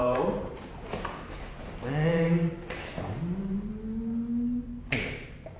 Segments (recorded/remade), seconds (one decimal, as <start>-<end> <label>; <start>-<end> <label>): 0.0-0.7 remade; 0.7-2.1 recorded; 2.1-3.7 remade; 3.7-5.6 recorded